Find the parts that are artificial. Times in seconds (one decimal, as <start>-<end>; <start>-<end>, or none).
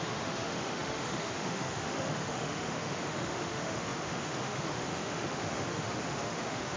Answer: 0.0-6.8